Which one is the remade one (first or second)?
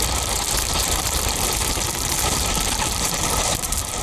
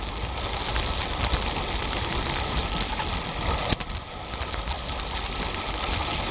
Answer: first